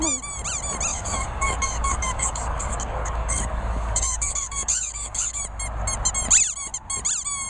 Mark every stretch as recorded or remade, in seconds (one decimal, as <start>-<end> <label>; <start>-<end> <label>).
0.0-0.9 recorded; 0.9-5.4 remade; 5.4-7.5 recorded